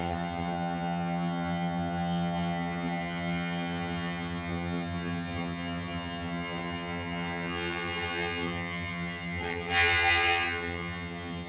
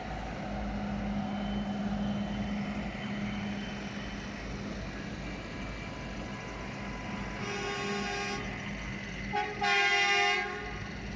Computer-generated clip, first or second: first